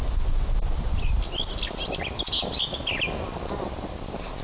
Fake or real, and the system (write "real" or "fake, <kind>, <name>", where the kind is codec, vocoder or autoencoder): real